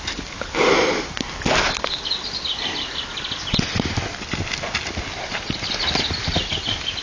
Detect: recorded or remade recorded